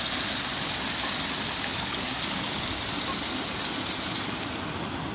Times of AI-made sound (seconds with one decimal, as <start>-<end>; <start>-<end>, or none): 1.7-2.6